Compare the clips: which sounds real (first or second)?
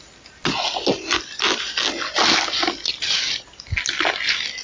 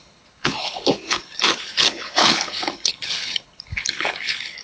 first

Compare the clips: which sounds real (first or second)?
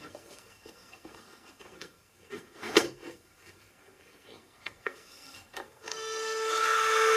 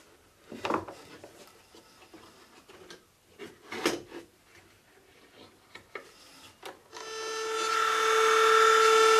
second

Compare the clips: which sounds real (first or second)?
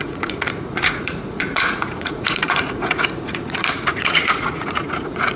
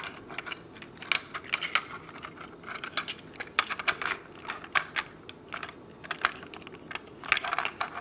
second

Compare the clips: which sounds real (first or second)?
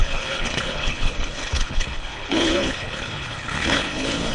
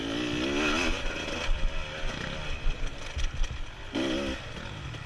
second